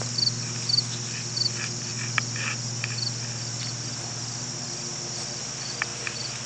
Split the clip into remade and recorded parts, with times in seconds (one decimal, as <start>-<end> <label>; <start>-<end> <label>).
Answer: 0.0-6.5 recorded